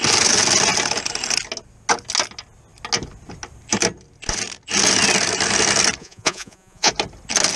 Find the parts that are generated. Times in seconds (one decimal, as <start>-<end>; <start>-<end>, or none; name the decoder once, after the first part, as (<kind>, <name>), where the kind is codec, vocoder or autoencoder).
6.0-6.9 (vocoder, Vocos)